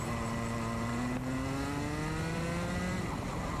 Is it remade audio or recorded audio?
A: recorded